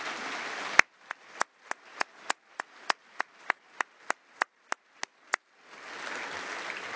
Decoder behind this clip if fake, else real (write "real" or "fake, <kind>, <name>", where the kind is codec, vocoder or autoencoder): real